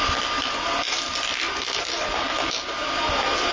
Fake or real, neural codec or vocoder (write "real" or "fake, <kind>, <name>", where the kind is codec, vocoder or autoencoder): real